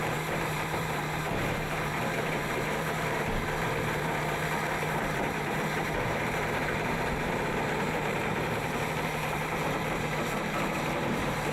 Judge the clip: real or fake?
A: fake